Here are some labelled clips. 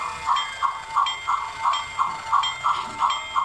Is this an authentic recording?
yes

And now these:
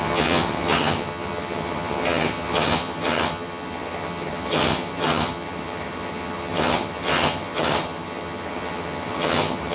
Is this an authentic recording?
no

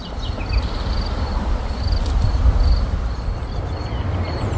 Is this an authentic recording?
yes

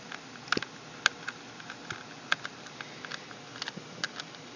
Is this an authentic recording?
yes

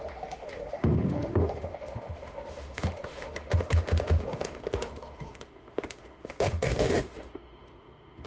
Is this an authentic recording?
no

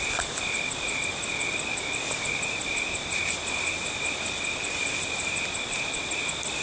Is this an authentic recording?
yes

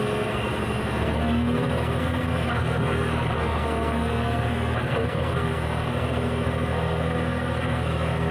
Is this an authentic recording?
no